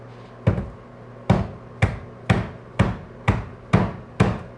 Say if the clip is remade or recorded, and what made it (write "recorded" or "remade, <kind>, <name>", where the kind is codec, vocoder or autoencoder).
recorded